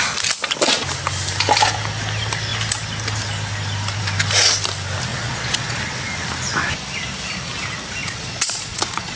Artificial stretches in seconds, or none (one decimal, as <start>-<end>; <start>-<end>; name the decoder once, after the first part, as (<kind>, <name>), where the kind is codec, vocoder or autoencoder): 5.1-5.8 (vocoder, Vocos); 8.0-9.2